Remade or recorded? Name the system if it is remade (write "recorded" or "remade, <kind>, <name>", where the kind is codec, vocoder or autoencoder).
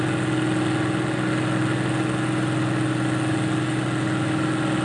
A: recorded